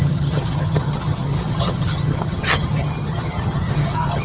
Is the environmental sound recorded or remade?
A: remade